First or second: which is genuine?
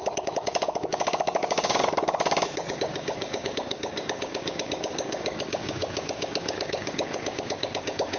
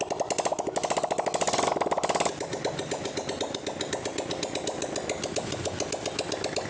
second